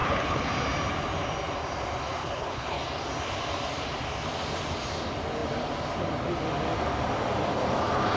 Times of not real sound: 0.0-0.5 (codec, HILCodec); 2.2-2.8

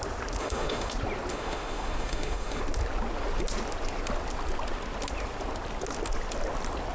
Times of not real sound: 0.4-0.9 (autoencoder, DAC-VAE); 1.3-2.6

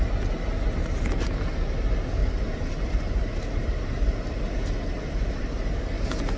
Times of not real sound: 2.2-6.0 (vocoder, BigVGAN v2)